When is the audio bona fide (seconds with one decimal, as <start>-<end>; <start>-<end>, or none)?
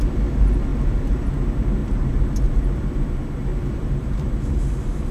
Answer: 0.0-0.7; 1.3-3.5; 4.3-5.1